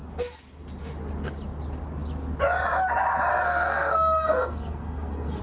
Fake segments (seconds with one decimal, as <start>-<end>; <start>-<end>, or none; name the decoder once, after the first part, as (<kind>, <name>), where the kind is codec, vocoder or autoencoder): 3.3-5.4 (codec, SNAC)